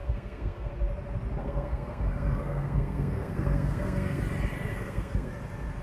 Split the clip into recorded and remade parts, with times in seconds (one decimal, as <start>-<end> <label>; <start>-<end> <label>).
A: 0.0-0.7 remade; 0.7-1.4 recorded; 1.4-4.2 remade; 4.2-4.7 recorded; 4.7-5.3 remade; 5.3-5.8 recorded